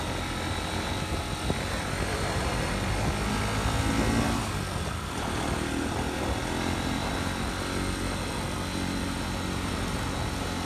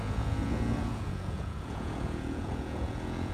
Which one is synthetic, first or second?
second